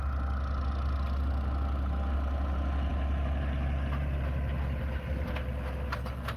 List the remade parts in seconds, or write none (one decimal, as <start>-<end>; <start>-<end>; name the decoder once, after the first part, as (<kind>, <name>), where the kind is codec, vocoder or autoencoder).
none